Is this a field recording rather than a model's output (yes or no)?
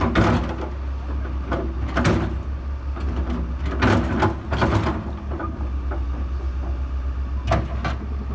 yes